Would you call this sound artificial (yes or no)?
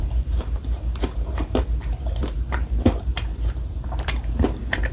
yes